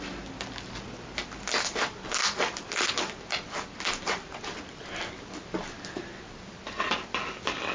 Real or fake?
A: real